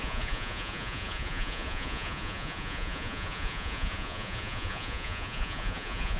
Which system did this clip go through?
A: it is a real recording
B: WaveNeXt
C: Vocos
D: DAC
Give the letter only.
C